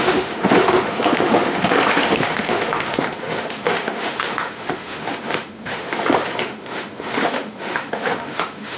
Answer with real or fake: fake